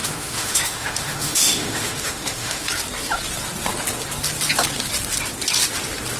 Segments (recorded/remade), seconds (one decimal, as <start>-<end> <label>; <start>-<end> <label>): 0.0-2.7 remade; 2.7-6.2 recorded